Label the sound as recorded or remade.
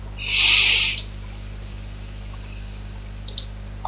recorded